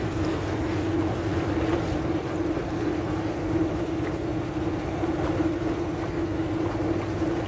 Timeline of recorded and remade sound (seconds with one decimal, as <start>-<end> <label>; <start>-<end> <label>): 0.0-7.5 recorded